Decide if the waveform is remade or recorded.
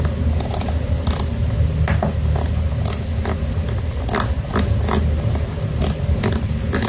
recorded